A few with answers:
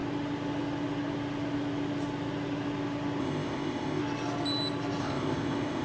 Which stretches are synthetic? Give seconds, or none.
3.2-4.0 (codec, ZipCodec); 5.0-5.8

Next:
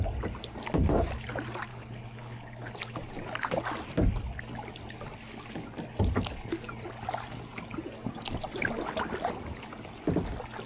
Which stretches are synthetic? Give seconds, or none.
1.7-2.7 (codec, HILCodec)

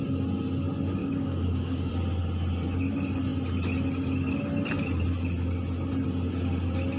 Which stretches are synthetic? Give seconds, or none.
1.0-1.9 (codec, DAC)

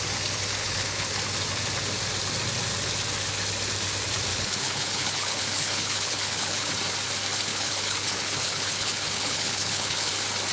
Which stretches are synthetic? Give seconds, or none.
0.6-1.1 (codec, HILCodec); 4.3-6.7; 7.5-10.1

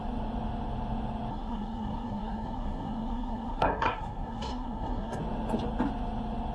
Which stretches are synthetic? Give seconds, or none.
1.3-5.2 (codec, SNAC)

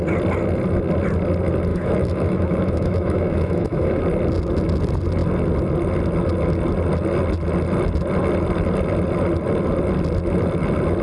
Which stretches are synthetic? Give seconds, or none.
1.7-4.0 (autoencoder, DAC-VAE)

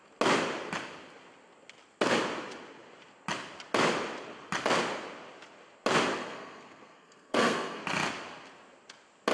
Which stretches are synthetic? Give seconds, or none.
6.2-7.8 (codec, SNAC)

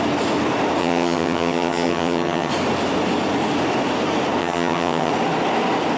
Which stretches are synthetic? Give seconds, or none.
0.8-2.5 (vocoder, HiFi-GAN); 4.4-5.1